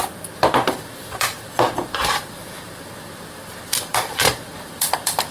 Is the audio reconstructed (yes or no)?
yes